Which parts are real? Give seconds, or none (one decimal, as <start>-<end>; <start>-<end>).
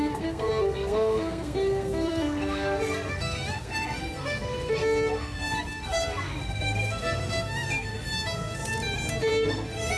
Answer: 8.6-9.3